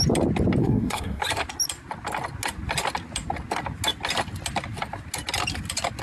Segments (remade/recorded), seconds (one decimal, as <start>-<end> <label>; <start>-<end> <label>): 0.0-0.6 recorded; 0.6-1.2 remade; 1.2-6.0 recorded